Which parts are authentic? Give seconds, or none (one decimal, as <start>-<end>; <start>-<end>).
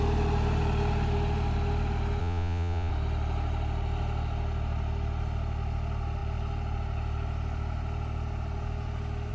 0.0-2.2; 2.9-9.3